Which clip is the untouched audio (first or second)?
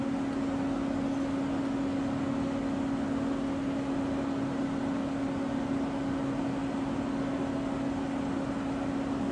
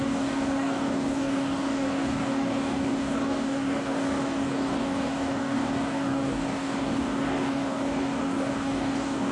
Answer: first